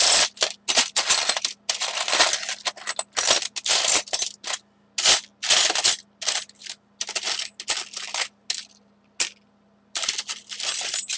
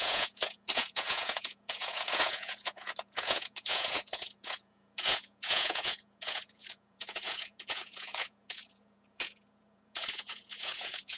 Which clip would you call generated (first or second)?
second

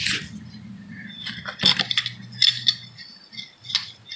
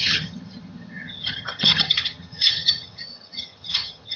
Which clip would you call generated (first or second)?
second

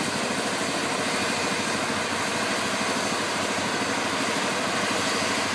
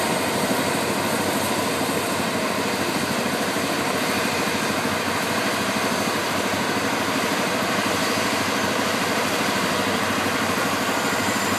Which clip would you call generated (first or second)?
second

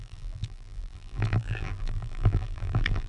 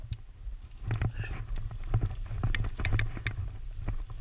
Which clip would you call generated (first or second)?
first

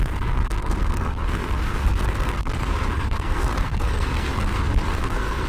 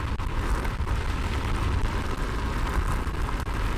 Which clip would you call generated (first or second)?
first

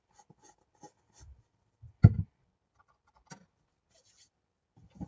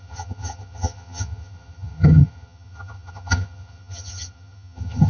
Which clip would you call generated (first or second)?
second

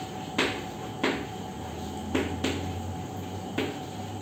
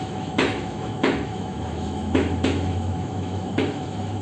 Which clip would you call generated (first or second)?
second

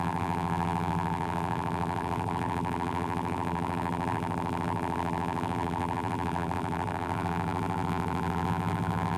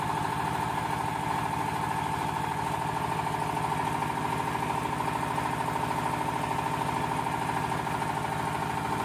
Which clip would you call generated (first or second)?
first